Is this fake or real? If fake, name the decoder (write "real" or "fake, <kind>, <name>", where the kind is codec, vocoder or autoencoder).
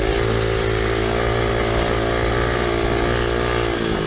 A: real